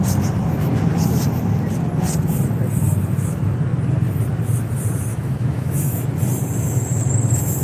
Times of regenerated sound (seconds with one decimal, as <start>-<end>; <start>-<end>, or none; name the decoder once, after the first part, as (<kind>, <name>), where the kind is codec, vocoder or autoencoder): 5.1-6.0 (autoencoder, DAC-VAE)